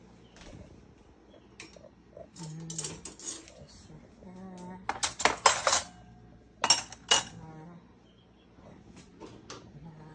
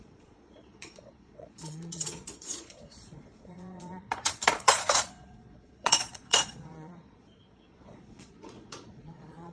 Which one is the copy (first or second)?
second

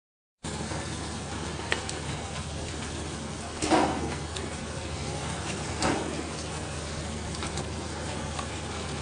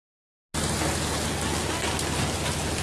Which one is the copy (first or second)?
first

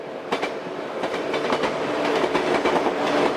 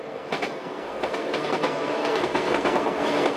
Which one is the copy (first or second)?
second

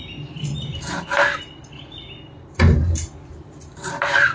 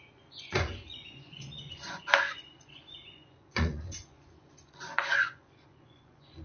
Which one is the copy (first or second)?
second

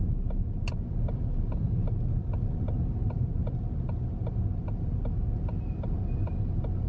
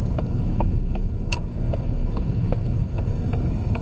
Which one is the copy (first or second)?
second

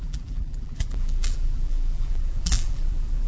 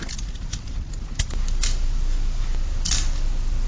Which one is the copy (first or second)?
first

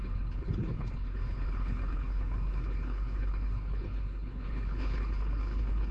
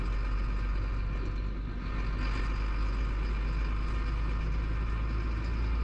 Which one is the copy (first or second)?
first